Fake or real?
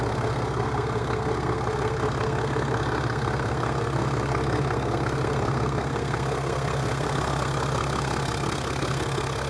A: fake